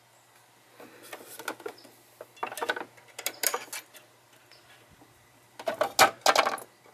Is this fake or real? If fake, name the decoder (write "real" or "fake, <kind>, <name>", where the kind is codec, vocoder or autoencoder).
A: real